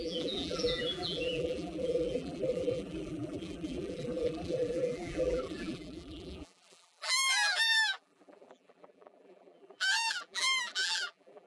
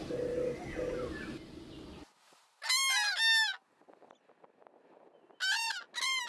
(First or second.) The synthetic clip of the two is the first